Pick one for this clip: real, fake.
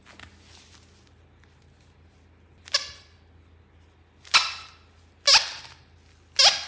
real